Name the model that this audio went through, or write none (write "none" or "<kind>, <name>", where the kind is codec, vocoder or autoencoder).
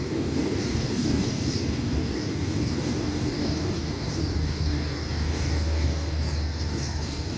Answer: codec, DAC